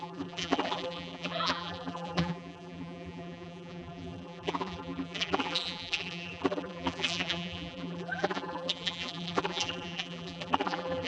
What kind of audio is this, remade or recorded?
remade